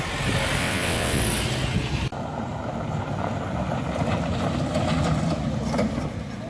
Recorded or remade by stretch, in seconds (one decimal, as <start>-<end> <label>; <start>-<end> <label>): 0.0-0.6 recorded; 0.6-1.2 remade; 1.2-6.5 recorded